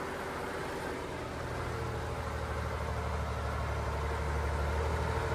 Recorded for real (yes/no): yes